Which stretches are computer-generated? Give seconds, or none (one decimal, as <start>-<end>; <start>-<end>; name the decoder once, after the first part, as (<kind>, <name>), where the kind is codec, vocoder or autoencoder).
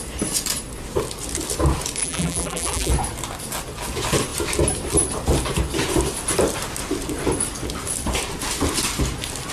2.0-2.9 (vocoder, BigVGAN v2)